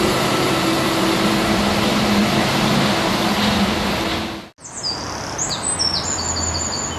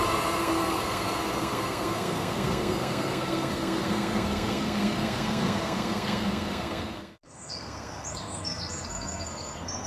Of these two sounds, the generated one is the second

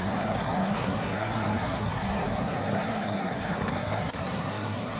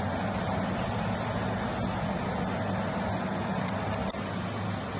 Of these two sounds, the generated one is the first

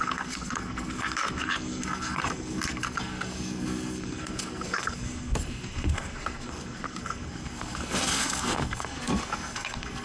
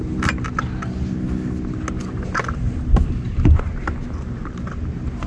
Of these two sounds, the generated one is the first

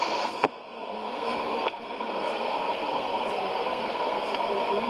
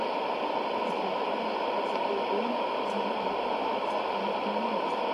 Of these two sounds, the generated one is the first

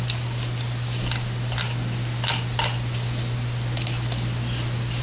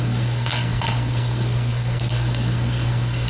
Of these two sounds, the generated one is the second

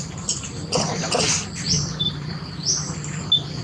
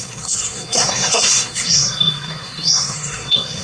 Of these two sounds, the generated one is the second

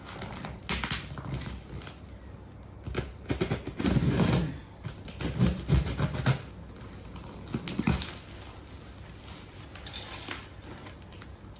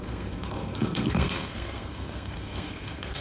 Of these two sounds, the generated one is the second